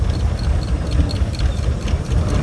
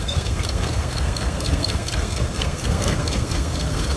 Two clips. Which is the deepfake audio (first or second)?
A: second